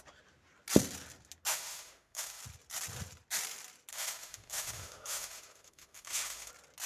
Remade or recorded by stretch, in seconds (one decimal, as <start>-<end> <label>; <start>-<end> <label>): 0.0-1.5 recorded; 1.5-2.4 remade; 2.4-3.9 recorded; 3.9-6.5 remade; 6.5-6.9 recorded